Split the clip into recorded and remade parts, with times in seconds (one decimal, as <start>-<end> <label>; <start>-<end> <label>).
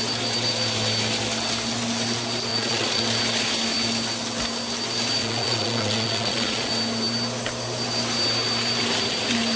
0.0-2.5 recorded; 2.5-3.0 remade; 3.0-5.2 recorded; 5.2-6.7 remade; 6.7-9.6 recorded